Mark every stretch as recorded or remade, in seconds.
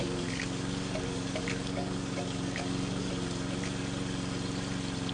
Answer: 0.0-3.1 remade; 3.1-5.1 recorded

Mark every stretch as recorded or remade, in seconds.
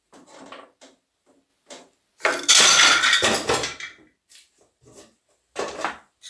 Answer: 0.0-6.3 recorded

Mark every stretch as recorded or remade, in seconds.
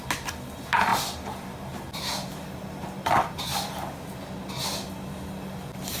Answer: 0.0-6.0 recorded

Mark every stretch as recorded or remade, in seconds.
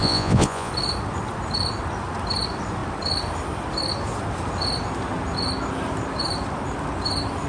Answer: 0.0-0.7 remade; 0.7-7.5 recorded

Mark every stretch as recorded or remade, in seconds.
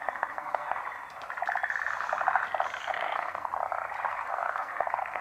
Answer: 0.0-0.8 remade; 0.8-2.8 recorded; 2.8-3.5 remade; 3.5-4.1 recorded; 4.1-5.2 remade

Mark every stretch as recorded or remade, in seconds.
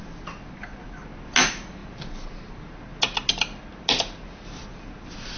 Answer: 0.0-5.4 recorded